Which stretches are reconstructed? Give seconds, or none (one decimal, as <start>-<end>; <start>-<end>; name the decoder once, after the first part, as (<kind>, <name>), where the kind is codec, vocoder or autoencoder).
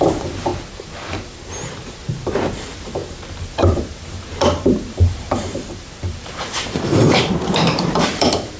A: 0.0-0.5 (vocoder, BigVGAN v2); 1.7-8.6